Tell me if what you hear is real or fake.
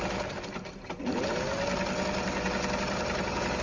real